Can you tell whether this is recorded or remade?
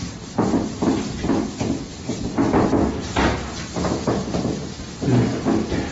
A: recorded